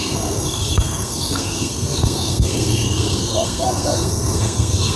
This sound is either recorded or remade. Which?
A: remade